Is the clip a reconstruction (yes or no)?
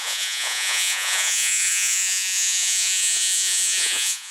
yes